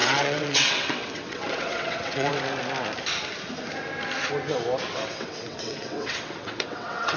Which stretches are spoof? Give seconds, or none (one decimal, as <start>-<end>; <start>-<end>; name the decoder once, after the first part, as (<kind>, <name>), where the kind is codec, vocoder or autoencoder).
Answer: 0.0-2.3 (vocoder, WaveNeXt); 4.9-7.2